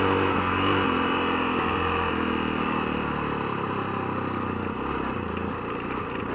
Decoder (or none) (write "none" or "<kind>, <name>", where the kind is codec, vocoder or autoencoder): none